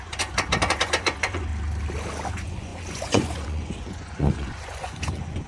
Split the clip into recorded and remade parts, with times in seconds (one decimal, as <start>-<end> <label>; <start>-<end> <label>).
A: 0.0-1.5 remade; 1.5-2.3 recorded; 2.3-5.5 remade